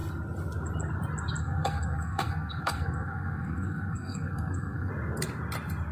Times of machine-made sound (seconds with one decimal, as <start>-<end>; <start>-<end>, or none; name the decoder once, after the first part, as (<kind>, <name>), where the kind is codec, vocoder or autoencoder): 1.4-4.9 (codec, SNAC)